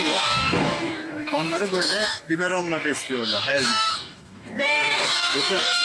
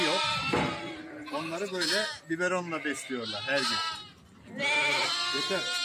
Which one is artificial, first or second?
first